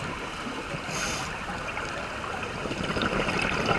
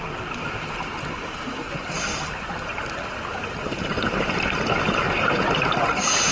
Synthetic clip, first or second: first